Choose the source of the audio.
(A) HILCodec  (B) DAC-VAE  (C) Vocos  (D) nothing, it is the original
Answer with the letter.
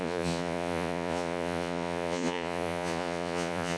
C